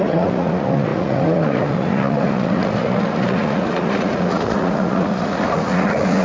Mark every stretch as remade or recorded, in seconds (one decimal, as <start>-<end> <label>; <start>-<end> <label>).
0.0-6.2 remade